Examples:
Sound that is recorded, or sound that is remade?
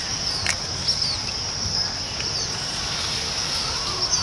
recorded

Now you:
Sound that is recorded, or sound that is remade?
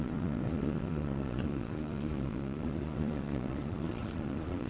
remade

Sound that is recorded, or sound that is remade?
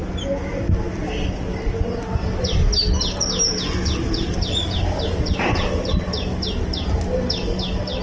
recorded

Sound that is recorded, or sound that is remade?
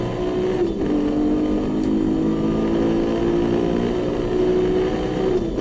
recorded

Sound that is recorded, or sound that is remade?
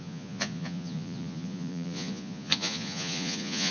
remade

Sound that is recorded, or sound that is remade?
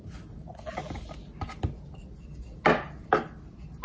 recorded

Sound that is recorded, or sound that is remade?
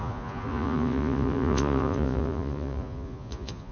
remade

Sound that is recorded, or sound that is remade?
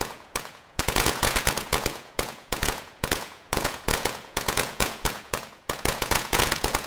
remade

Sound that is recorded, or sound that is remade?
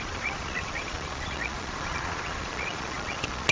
remade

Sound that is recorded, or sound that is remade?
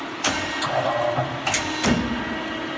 recorded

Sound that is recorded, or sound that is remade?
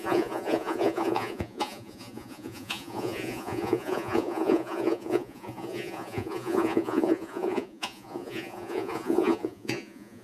remade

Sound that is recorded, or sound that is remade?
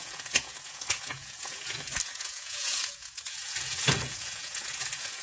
remade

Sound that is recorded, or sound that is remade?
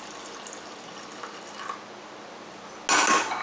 recorded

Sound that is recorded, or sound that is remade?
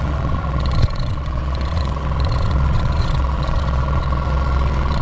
remade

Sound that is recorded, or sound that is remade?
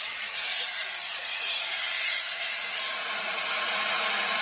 remade